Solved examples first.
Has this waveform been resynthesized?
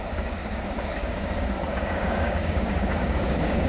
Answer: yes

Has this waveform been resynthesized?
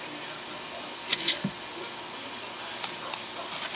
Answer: no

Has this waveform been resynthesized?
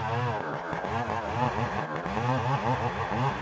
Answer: no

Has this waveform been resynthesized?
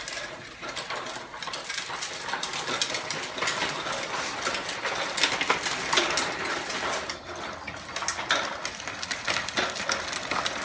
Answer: no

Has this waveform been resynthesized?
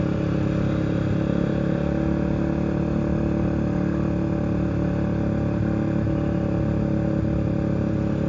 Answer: no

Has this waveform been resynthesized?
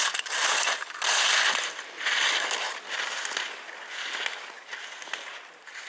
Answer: no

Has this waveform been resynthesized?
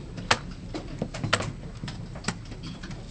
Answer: no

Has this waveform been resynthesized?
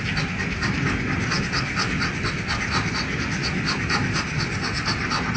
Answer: no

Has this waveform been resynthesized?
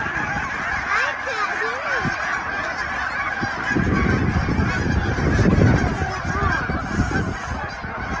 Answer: no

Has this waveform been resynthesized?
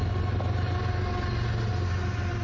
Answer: no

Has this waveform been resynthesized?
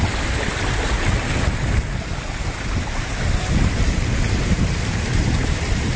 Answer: no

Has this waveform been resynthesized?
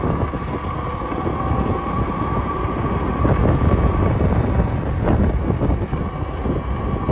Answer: no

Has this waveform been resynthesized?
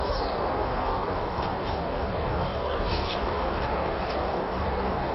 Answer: yes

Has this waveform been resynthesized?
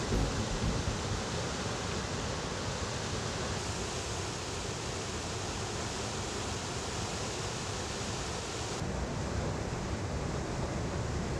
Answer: no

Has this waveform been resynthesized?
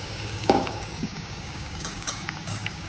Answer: yes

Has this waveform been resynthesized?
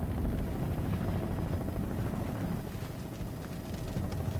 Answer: no